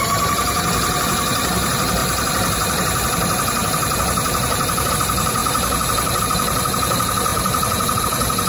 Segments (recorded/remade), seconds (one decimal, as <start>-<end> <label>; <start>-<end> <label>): 0.0-8.5 remade

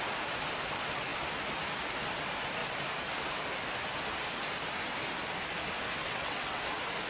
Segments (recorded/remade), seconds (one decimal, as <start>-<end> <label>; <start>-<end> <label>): 0.0-6.0 recorded; 6.0-6.6 remade; 6.6-7.1 recorded

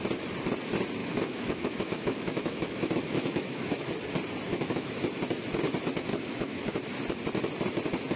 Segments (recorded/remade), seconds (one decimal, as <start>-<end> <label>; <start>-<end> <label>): 0.0-1.0 recorded; 1.0-3.9 remade; 3.9-4.5 recorded; 4.5-5.0 remade; 5.0-6.1 recorded; 6.1-6.7 remade; 6.7-8.2 recorded

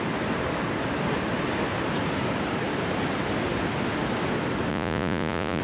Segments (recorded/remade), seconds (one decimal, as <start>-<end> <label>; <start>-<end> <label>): 0.0-4.7 recorded; 4.7-5.6 remade

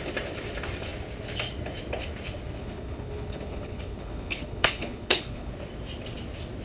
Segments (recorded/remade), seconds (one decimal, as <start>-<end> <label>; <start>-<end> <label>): 0.0-2.6 recorded; 2.6-5.5 remade; 5.5-6.6 recorded

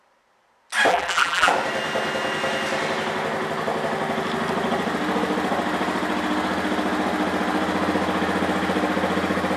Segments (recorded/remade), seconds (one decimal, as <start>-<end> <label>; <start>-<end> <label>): 0.0-0.9 recorded; 0.9-1.5 remade; 1.5-9.6 recorded

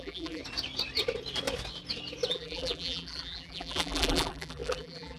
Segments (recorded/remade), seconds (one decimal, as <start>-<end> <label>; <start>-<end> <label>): 0.0-0.4 remade; 0.4-2.3 recorded; 2.3-5.2 remade

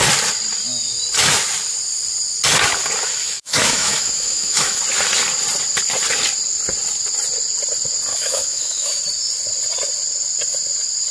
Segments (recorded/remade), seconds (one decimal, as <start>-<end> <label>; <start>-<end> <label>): 0.0-3.2 recorded; 3.2-4.8 remade; 4.8-8.1 recorded; 8.1-9.0 remade; 9.0-11.1 recorded